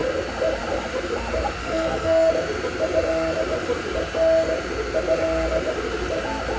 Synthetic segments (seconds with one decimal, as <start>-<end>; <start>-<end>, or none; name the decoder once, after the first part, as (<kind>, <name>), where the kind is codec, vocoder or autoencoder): 1.6-2.3 (codec, SNAC)

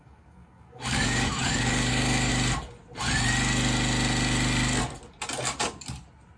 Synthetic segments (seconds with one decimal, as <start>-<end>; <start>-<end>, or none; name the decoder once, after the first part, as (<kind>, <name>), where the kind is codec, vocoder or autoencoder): 0.0-2.3 (codec, DAC)

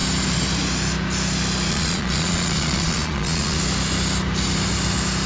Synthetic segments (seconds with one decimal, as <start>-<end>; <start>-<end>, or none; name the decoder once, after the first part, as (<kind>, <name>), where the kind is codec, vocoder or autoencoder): 1.7-3.6 (vocoder, Vocos)